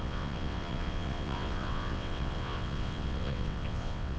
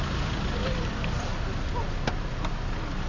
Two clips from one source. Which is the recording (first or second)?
second